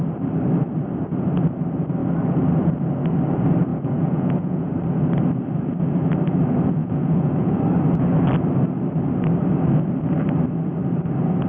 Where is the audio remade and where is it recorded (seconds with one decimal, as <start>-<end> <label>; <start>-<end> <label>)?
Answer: 0.0-3.7 recorded; 3.7-4.7 remade; 4.7-6.8 recorded; 6.8-7.6 remade; 7.6-11.5 recorded